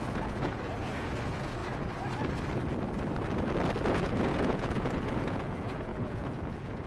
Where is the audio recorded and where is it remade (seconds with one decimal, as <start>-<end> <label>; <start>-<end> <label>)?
0.0-1.6 remade; 1.6-3.9 recorded; 3.9-6.9 remade